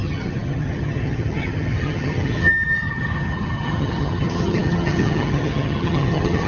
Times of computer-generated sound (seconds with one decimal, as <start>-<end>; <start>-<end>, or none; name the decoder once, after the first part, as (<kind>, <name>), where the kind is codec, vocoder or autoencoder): 0.0-6.5 (vocoder, HiFi-GAN)